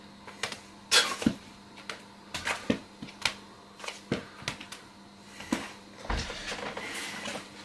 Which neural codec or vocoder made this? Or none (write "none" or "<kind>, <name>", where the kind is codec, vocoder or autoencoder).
none